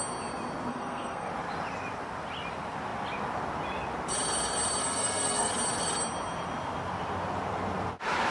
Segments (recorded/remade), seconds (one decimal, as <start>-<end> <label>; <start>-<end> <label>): 0.0-0.7 recorded; 0.7-1.3 remade; 1.3-4.8 recorded; 4.8-5.5 remade; 5.5-8.3 recorded